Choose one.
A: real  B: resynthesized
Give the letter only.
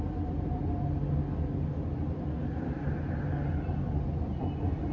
A